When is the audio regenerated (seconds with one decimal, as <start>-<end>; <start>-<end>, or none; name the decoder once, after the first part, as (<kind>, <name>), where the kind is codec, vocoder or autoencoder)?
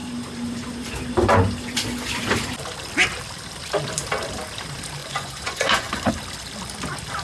5.0-6.1 (vocoder, Vocos)